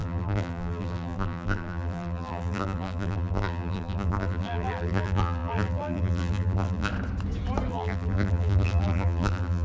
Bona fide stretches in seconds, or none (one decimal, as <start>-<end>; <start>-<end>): 6.9-7.7